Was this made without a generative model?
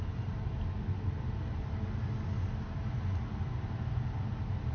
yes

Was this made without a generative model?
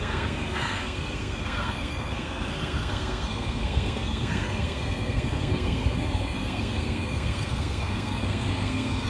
no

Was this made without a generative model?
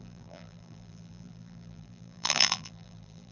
no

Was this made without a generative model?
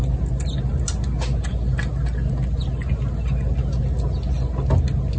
yes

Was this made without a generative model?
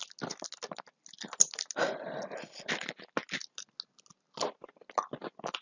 yes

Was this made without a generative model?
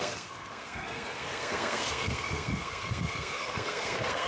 no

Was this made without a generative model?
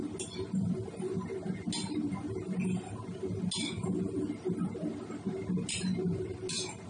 yes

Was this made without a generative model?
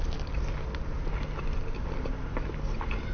yes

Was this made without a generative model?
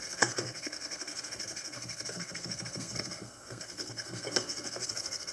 no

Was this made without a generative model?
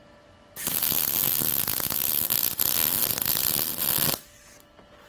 yes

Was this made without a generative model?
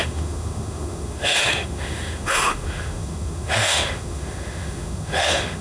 no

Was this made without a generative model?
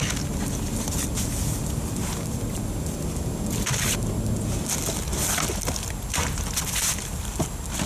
yes